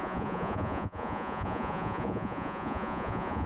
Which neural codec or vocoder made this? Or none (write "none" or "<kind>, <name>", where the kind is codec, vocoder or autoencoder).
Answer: vocoder, Vocos